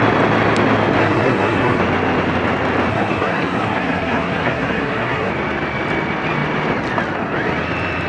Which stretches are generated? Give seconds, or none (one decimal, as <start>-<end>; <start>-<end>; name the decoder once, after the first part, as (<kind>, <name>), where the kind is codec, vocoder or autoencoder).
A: 1.0-1.8 (codec, SNAC); 2.9-5.3